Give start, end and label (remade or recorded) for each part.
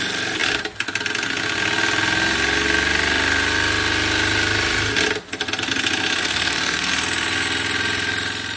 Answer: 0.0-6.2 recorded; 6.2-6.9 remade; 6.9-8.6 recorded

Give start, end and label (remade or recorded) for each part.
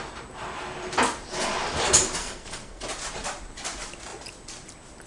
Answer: 0.0-2.2 recorded; 2.2-2.8 remade; 2.8-5.1 recorded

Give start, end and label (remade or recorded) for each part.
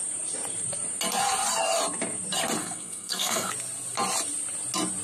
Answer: 0.0-2.6 recorded; 2.6-3.5 remade; 3.5-5.0 recorded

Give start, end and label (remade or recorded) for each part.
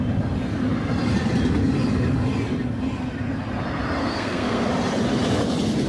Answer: 0.0-4.0 recorded; 4.0-4.7 remade; 4.7-5.9 recorded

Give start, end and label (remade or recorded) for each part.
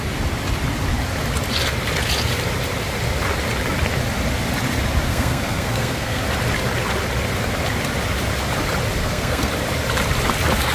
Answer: 0.0-5.1 recorded; 5.1-6.2 remade; 6.2-9.0 recorded; 9.0-9.5 remade; 9.5-10.7 recorded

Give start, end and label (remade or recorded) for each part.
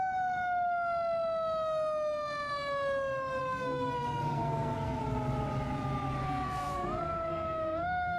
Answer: 0.0-3.4 recorded; 3.4-5.0 remade; 5.0-6.2 recorded; 6.2-8.2 remade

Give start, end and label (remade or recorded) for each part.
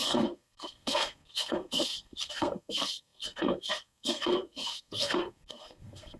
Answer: 0.0-6.2 remade